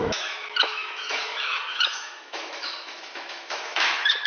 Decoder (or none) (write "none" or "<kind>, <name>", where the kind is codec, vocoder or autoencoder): autoencoder, DAC-VAE